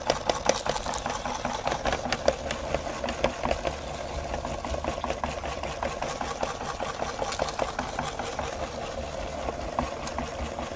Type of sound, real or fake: real